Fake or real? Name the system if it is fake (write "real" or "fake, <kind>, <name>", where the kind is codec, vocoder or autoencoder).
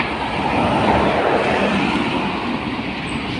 real